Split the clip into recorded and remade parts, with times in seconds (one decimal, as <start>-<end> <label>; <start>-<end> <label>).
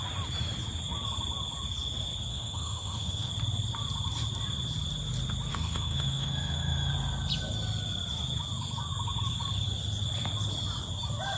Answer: 0.0-2.3 recorded; 2.3-3.3 remade; 3.3-5.5 recorded; 5.5-6.9 remade; 6.9-11.4 recorded